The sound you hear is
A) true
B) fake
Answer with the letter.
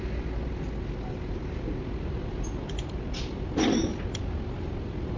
A